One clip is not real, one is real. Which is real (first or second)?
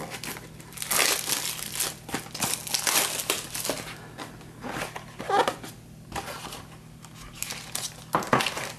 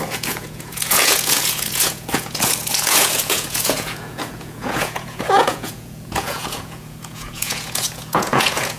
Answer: first